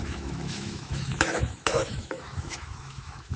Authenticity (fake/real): fake